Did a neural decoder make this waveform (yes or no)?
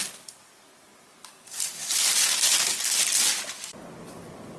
no